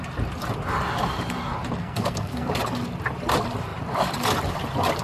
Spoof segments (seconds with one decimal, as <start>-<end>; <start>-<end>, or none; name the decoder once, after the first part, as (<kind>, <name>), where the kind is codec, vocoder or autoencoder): 1.8-2.5 (codec, SNAC)